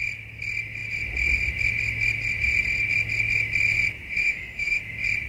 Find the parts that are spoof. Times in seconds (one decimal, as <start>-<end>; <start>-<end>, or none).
4.2-4.8